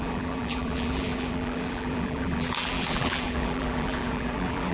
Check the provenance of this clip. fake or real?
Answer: fake